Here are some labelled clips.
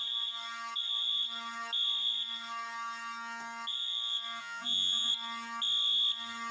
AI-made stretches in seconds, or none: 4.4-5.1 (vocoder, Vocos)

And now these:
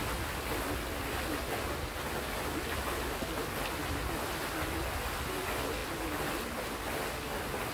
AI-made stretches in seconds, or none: none

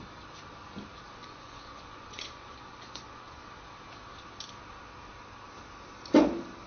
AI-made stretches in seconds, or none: 1.2-3.4 (vocoder, Vocos)

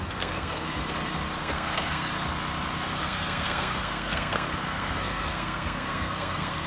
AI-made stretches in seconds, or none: 0.0-0.8 (codec, SNAC); 1.4-2.1; 3.0-6.7

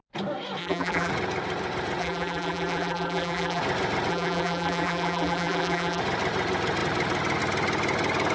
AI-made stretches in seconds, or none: 0.6-1.1 (vocoder, BigVGAN v2); 2.0-3.6; 4.1-6.0

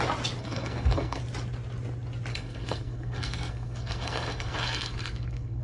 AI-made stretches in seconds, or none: 0.4-1.2 (codec, SNAC); 2.3-5.6